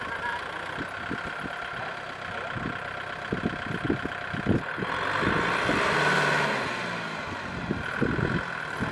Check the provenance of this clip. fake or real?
real